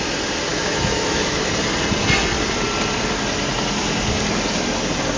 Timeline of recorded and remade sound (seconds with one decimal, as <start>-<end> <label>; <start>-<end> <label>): 0.0-0.5 recorded; 0.5-1.5 remade; 1.5-5.2 recorded